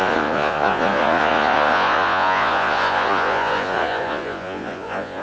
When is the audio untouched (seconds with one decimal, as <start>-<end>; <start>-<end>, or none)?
none